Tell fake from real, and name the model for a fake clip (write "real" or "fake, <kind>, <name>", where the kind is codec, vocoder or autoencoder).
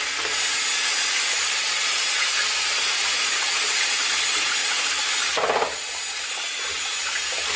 real